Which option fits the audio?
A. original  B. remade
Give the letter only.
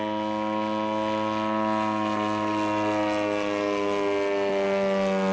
A